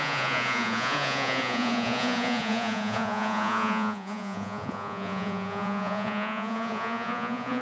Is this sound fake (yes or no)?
yes